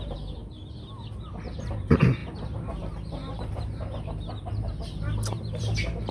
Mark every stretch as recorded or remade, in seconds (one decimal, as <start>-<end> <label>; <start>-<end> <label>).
0.0-0.4 remade; 0.4-1.6 recorded; 1.6-6.1 remade